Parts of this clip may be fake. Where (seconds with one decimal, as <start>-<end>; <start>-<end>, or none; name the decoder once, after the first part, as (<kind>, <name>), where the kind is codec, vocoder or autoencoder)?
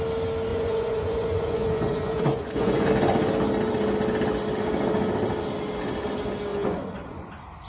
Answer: 0.5-2.9 (vocoder, Vocos); 6.5-7.3